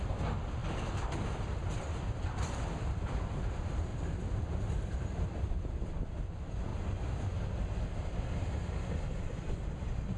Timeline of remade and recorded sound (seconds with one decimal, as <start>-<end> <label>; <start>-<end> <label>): 0.0-0.6 recorded; 0.6-3.1 remade; 3.1-3.9 recorded; 3.9-6.1 remade; 6.1-10.2 recorded